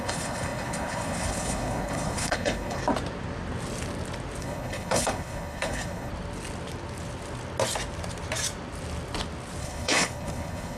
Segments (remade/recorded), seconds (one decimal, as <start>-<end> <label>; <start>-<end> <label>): 0.0-2.8 remade; 2.8-4.4 recorded; 4.4-6.1 remade; 6.1-9.6 recorded; 9.6-10.8 remade

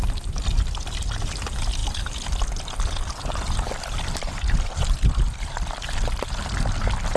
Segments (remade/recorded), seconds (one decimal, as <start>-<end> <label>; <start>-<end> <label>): 0.0-7.2 recorded

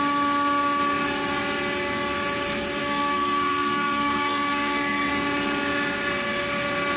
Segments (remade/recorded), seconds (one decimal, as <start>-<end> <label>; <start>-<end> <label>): 0.0-2.8 recorded; 2.8-5.1 remade; 5.1-7.0 recorded

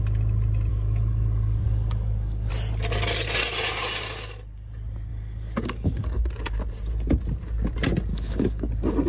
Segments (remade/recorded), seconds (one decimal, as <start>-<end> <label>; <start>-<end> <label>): 0.0-0.7 recorded; 0.7-2.5 remade; 2.5-5.1 recorded; 5.1-6.2 remade; 6.2-8.1 recorded; 8.1-8.7 remade; 8.7-9.1 recorded